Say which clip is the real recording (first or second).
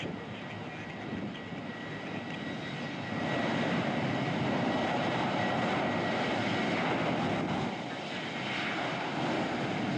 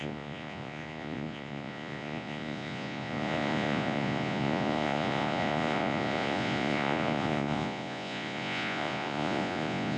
first